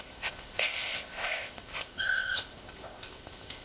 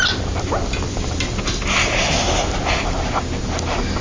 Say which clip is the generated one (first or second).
first